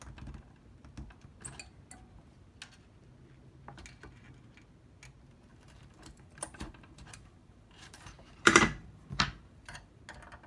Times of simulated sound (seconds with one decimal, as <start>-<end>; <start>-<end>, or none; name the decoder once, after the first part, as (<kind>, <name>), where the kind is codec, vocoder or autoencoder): 5.5-10.0 (vocoder, BigVGAN v2)